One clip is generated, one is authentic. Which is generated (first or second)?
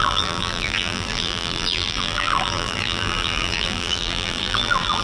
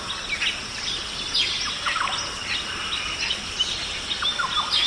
first